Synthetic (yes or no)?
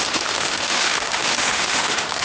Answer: yes